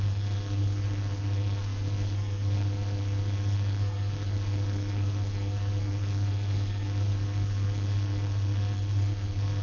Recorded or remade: remade